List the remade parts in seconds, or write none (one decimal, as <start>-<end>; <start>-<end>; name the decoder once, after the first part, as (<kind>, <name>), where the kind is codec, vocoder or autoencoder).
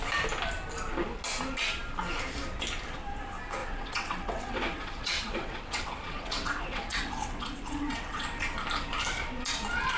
3.6-8.4 (vocoder, WaveNeXt)